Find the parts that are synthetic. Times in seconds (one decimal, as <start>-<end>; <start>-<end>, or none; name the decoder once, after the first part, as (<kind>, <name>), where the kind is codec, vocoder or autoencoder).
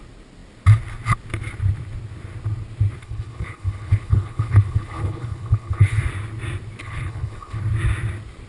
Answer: 3.0-6.0 (codec, HILCodec); 6.8-7.6